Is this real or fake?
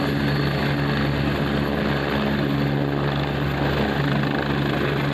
real